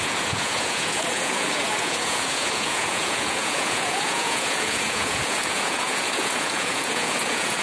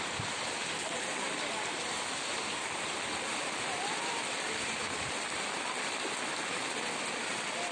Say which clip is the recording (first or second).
second